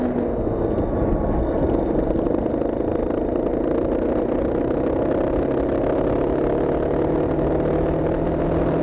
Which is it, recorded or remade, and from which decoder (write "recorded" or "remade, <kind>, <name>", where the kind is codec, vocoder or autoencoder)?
recorded